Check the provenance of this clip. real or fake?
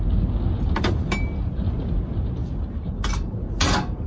real